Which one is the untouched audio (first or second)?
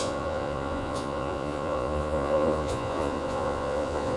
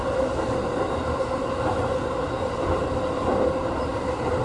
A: second